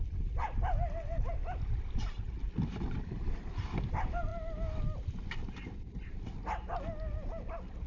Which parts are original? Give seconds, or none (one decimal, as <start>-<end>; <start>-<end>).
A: 0.0-7.9